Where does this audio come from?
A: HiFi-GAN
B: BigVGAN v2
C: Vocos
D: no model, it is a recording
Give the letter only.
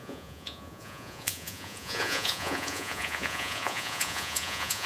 C